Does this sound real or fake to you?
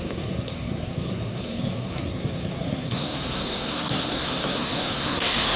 fake